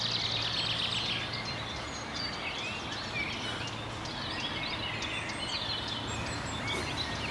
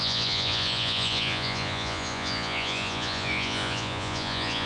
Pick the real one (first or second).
first